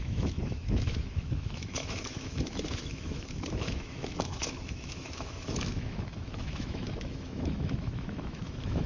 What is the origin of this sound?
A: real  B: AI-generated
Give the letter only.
B